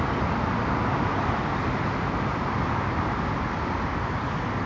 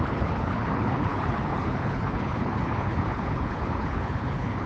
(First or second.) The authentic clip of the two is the first